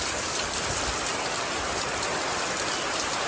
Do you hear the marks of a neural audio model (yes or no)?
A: no